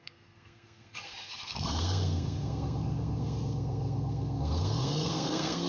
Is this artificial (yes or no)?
yes